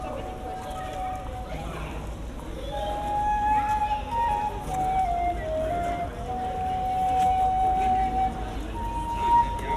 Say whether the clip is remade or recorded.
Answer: recorded